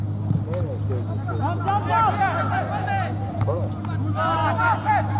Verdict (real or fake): real